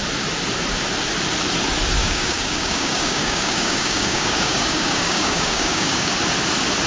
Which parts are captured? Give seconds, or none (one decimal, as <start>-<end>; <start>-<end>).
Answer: 0.0-2.0; 6.1-6.9